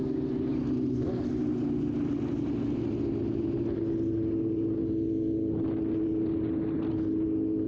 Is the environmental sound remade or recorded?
recorded